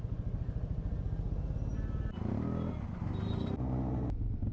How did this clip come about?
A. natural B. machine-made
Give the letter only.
A